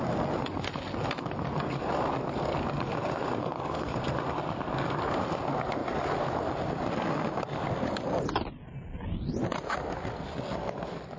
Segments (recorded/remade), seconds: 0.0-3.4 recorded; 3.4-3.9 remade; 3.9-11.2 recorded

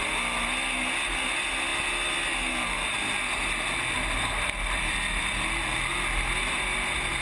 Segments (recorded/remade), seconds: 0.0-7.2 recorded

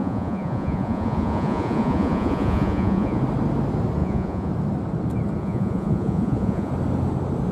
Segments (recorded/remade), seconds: 0.0-3.2 remade; 3.2-4.0 recorded; 4.0-4.5 remade; 4.5-5.4 recorded; 5.4-6.7 remade; 6.7-7.5 recorded

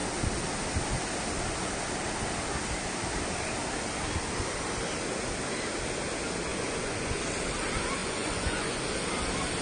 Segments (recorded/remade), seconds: 0.0-6.5 recorded; 6.5-7.2 remade; 7.2-8.0 recorded; 8.0-8.8 remade; 8.8-9.6 recorded

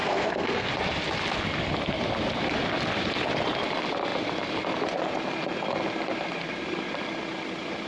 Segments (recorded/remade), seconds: 0.0-0.7 remade; 0.7-7.9 recorded